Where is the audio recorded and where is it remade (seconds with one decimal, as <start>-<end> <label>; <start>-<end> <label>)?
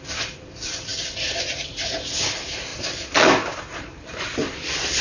0.0-2.7 remade; 2.7-3.6 recorded; 3.6-5.0 remade